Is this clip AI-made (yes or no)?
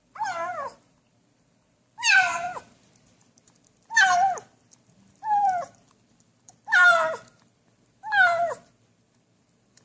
yes